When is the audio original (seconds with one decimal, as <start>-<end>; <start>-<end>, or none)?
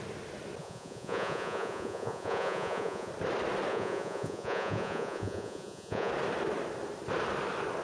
0.0-0.6; 3.1-3.7; 6.1-7.8